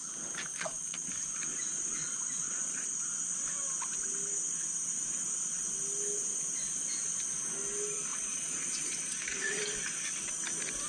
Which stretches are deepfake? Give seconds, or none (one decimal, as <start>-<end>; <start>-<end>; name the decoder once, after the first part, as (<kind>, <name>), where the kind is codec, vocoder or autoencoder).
0.5-1.1 (vocoder, Vocos); 2.0-3.0; 8.1-9.6